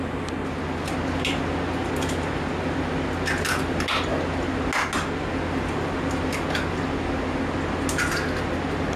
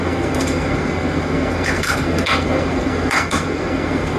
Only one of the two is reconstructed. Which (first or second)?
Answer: second